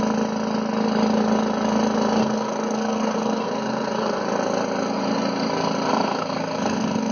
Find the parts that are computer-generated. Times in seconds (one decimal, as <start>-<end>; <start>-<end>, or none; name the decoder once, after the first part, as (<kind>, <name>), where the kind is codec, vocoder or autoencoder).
2.2-4.2 (codec, SNAC); 5.9-7.1